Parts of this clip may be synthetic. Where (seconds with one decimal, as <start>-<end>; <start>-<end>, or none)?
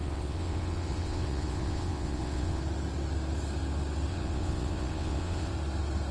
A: 0.0-2.6; 4.1-5.5